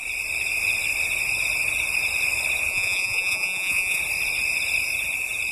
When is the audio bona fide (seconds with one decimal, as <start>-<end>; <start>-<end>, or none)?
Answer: 0.0-2.7; 4.0-5.5